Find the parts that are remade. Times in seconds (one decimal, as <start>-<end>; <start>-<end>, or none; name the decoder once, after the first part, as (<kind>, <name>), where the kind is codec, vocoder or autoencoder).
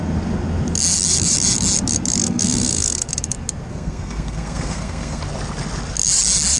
2.2-3.1 (codec, SNAC); 3.7-5.2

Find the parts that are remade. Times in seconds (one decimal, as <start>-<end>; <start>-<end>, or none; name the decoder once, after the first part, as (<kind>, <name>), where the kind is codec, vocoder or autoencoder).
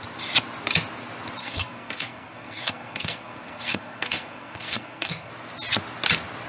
1.4-5.3 (codec, SNAC)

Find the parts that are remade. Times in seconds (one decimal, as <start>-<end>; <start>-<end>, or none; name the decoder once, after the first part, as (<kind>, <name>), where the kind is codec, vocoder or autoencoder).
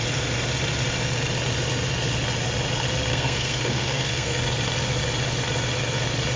3.1-4.4 (codec, SNAC)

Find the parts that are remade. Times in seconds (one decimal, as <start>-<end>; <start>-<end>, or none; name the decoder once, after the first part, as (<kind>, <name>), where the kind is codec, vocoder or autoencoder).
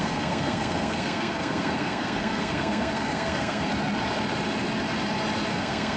0.0-3.7 (codec, SNAC); 5.5-6.0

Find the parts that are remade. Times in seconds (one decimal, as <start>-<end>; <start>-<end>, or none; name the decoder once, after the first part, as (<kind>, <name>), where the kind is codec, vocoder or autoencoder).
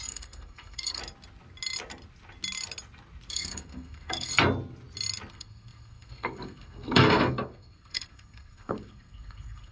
0.0-1.0 (codec, SNAC); 3.3-4.3; 5.3-9.7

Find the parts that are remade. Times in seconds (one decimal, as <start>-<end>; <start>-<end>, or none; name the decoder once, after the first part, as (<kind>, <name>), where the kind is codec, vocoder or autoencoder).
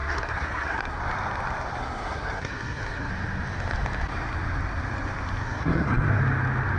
0.0-1.0 (codec, SNAC); 1.8-3.1; 5.4-6.2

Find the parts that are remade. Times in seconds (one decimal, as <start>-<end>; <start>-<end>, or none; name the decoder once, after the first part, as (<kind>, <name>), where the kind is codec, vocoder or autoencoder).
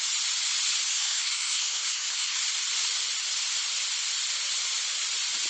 0.9-2.4 (codec, SNAC)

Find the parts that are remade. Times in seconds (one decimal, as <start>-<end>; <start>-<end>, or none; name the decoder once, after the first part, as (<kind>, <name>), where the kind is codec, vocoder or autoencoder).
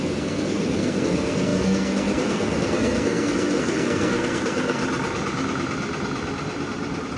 0.0-4.8 (codec, SNAC)